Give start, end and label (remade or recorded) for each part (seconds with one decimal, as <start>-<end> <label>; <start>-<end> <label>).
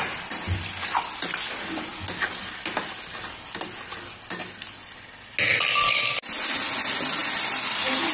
0.0-8.1 recorded